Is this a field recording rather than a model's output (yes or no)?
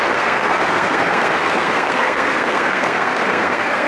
no